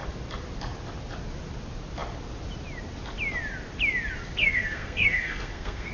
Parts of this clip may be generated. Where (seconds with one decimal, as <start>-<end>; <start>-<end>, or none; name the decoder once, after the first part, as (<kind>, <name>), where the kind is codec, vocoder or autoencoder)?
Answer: 4.4-5.9 (codec, SNAC)